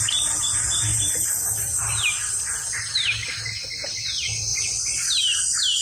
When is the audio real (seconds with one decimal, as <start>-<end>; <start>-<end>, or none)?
0.0-0.9; 2.8-4.5; 5.2-5.8